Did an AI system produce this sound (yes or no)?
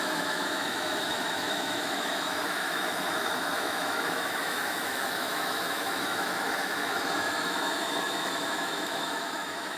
yes